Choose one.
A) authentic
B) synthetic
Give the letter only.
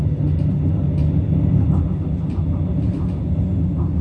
A